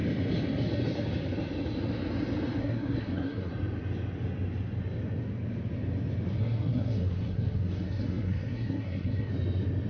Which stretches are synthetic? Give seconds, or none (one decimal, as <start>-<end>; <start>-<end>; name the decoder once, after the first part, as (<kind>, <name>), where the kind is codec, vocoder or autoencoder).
2.6-3.5 (codec, SNAC); 6.4-9.3